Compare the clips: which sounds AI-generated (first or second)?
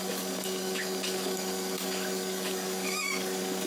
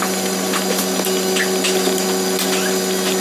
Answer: first